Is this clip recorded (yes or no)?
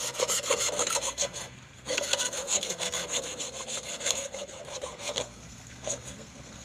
no